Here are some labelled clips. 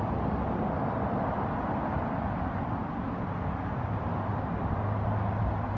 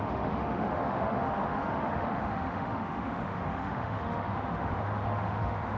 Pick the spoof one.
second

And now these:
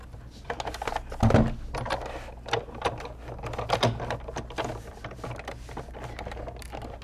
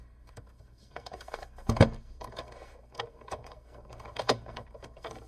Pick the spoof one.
second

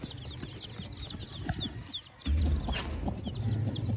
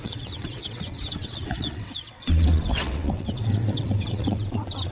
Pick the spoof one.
second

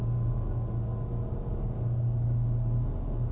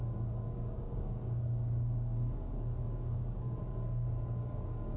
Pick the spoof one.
second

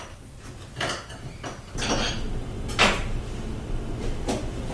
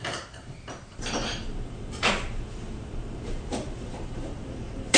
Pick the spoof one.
second